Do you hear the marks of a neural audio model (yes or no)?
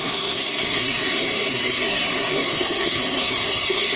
yes